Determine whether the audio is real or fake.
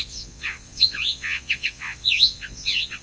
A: fake